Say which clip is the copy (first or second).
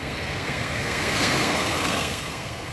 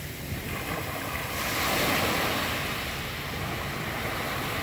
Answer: first